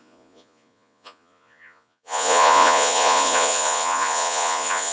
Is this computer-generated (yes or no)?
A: yes